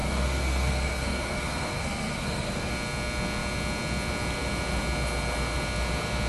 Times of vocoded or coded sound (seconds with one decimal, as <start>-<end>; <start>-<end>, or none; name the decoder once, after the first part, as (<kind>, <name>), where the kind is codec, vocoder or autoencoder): 0.0-2.7 (codec, SNAC)